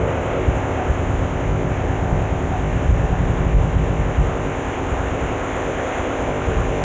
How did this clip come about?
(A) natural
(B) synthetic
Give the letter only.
B